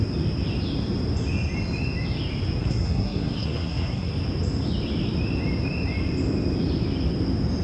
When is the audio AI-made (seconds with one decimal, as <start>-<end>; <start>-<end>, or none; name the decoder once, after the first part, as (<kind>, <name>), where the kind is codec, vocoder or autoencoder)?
2.6-4.1 (codec, SNAC)